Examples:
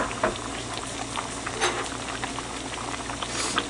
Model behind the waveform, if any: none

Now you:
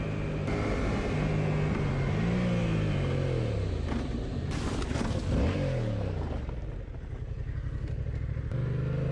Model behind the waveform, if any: none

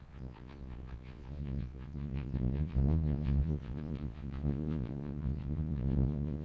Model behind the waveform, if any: vocoder, Vocos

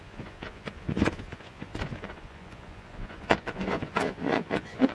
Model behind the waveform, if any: vocoder, Vocos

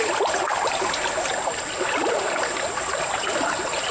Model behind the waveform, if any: none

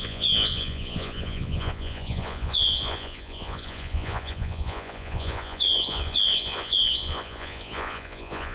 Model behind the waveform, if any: vocoder, Vocos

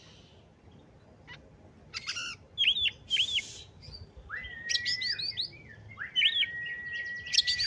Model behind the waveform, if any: none